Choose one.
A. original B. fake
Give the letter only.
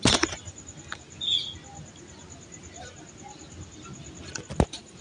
A